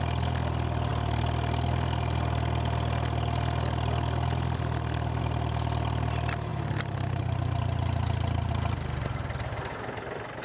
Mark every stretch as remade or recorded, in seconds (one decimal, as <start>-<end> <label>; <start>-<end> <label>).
0.0-6.5 recorded; 6.5-8.5 remade; 8.5-10.4 recorded